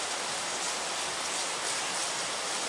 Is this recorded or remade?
recorded